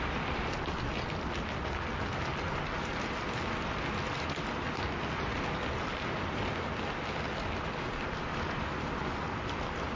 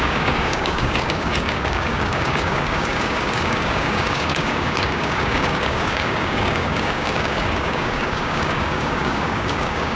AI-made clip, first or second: second